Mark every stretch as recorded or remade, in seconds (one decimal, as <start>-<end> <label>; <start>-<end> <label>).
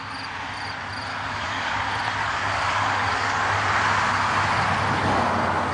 0.0-1.1 recorded; 1.1-1.8 remade; 1.8-2.2 recorded; 2.2-3.6 remade; 3.6-5.7 recorded